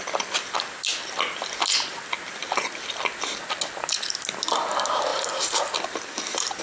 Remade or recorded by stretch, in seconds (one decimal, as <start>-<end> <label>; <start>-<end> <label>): 0.0-5.1 recorded; 5.1-6.6 remade